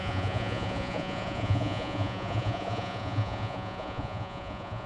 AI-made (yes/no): yes